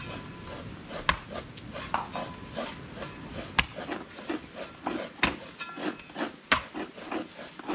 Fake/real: real